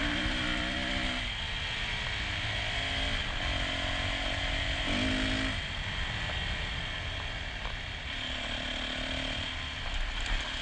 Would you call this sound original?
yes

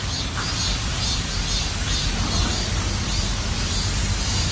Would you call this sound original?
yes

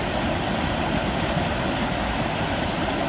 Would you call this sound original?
yes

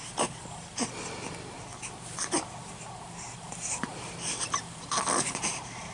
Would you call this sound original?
yes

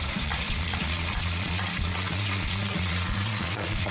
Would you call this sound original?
no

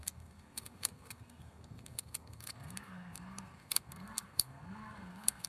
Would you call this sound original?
no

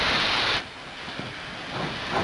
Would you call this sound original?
yes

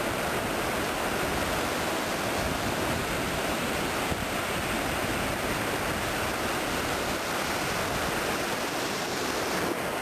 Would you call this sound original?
yes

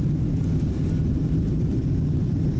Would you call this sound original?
yes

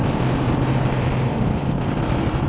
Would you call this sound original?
yes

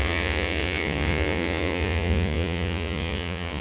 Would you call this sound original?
no